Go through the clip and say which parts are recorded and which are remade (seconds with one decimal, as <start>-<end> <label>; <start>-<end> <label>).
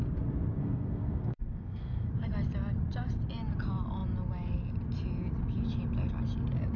0.0-0.6 recorded; 0.6-2.1 remade; 2.1-6.8 recorded